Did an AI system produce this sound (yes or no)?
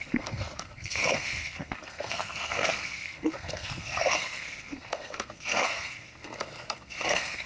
yes